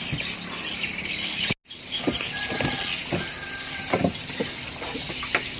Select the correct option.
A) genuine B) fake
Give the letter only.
A